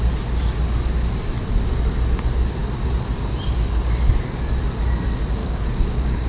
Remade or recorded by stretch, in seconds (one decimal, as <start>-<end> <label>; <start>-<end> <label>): 0.0-5.4 recorded; 5.4-6.3 remade